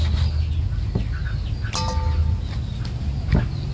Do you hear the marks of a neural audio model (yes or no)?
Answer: no